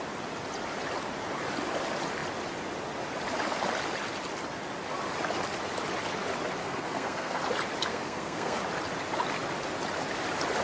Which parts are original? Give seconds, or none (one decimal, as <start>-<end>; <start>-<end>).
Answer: 0.0-6.6; 7.4-7.9; 8.6-10.6